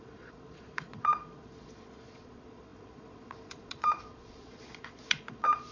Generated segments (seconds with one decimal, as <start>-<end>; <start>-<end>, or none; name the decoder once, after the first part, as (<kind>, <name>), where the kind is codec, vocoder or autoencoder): 0.0-5.7 (vocoder, Vocos)